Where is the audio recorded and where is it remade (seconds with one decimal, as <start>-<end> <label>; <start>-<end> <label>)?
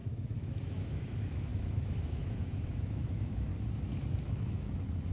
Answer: 0.0-3.5 remade; 3.5-4.2 recorded; 4.2-5.1 remade